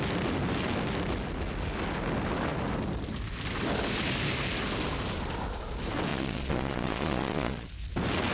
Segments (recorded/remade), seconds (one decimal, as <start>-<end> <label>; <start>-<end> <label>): 0.0-6.1 recorded; 6.1-7.7 remade; 7.7-8.3 recorded